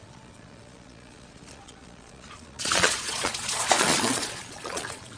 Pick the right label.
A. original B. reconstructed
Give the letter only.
B